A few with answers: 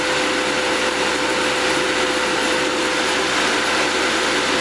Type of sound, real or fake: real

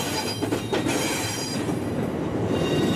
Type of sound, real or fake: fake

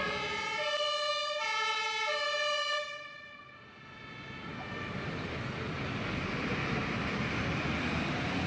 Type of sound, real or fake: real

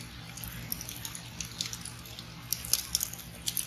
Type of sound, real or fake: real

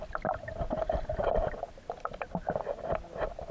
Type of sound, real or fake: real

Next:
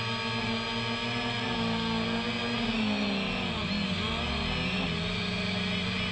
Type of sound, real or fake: real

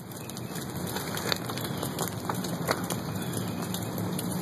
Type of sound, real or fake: real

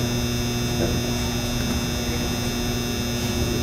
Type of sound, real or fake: real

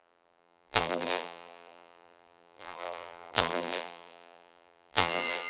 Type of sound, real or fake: fake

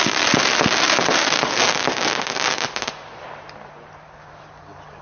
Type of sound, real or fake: fake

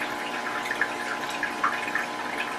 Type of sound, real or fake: real